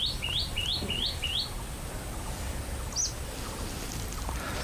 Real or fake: real